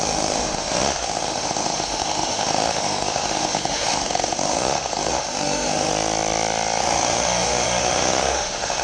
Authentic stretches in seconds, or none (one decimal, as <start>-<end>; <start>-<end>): 5.9-6.8